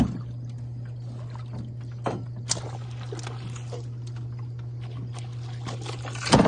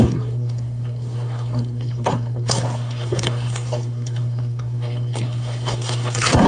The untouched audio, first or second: first